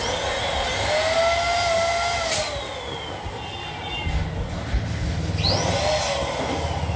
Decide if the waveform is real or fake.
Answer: real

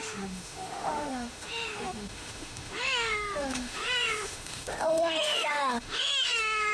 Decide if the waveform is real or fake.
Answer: fake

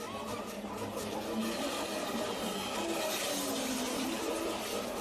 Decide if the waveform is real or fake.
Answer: real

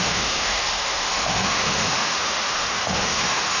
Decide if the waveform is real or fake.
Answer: fake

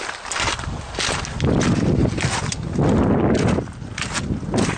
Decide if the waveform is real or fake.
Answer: real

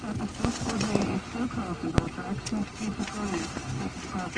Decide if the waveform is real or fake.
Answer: real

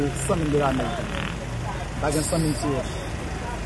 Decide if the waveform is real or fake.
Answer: real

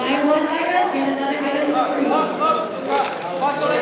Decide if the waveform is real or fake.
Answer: fake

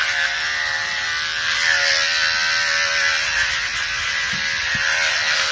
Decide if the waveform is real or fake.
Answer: real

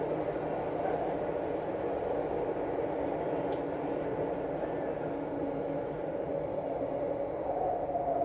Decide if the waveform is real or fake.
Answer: real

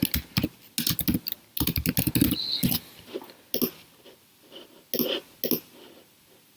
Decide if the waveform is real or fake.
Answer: real